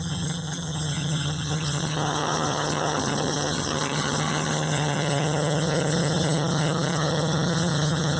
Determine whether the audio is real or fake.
fake